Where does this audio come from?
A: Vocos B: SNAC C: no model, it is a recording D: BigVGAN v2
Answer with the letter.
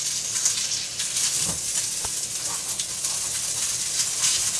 C